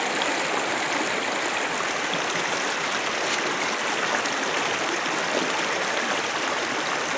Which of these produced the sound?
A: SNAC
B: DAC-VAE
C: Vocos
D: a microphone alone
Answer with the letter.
D